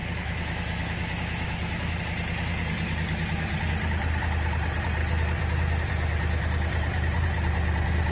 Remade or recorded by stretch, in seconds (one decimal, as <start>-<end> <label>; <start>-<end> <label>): 0.0-2.0 remade; 2.0-8.1 recorded

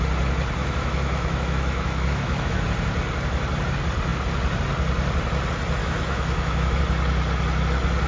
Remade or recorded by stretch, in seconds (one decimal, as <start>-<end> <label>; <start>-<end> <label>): 0.0-0.6 recorded; 0.6-2.6 remade; 2.6-5.8 recorded; 5.8-6.8 remade; 6.8-8.1 recorded